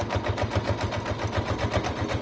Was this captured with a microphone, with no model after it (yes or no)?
yes